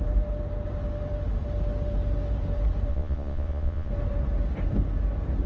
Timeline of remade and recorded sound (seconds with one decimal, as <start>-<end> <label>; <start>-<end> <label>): 0.0-2.9 recorded; 2.9-3.9 remade; 3.9-5.5 recorded